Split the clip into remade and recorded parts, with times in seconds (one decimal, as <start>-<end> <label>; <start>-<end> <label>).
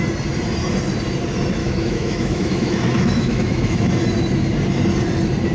0.0-1.6 recorded; 1.6-3.9 remade; 3.9-5.5 recorded